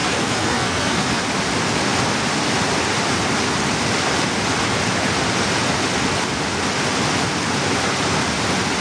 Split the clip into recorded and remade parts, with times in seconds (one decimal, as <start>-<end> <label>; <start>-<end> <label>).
0.0-1.2 remade; 1.2-8.8 recorded